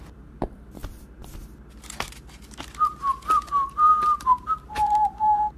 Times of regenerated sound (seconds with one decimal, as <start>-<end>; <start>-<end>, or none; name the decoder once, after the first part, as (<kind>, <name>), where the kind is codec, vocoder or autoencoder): 0.0-0.8 (vocoder, BigVGAN v2); 4.2-5.6